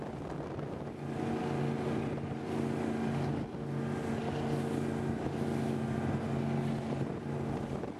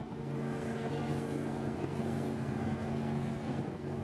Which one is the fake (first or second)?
second